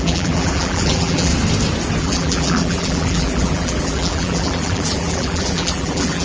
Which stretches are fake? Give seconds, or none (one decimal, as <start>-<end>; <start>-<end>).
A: 0.0-1.3; 2.0-6.2